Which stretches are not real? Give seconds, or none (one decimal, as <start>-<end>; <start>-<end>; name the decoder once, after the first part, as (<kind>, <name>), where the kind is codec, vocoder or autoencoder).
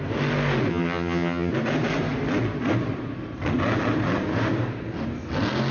0.7-1.5 (vocoder, HiFi-GAN)